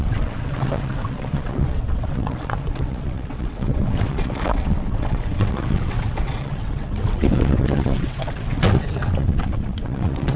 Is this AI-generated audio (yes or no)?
yes